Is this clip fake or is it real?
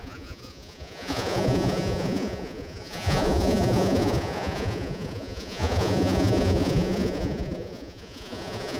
fake